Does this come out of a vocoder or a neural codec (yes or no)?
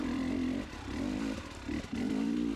yes